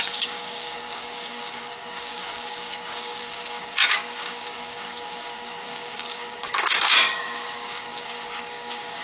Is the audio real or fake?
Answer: fake